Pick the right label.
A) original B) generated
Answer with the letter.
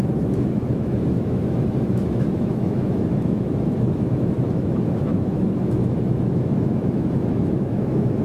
B